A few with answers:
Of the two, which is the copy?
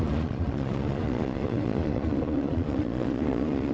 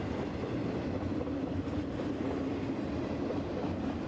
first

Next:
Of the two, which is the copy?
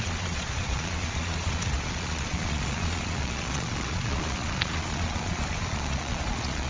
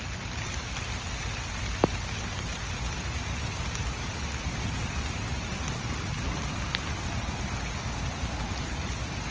first